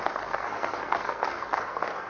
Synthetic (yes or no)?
yes